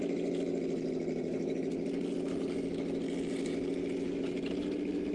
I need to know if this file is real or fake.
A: real